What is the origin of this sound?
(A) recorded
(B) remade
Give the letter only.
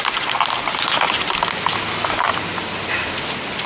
A